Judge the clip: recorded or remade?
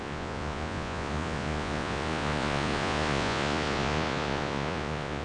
remade